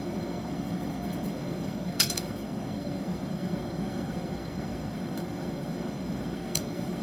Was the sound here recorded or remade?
remade